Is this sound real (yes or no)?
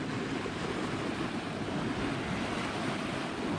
yes